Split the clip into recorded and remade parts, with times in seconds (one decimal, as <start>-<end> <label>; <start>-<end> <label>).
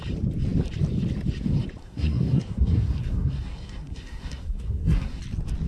0.0-1.8 recorded; 1.8-5.2 remade; 5.2-5.7 recorded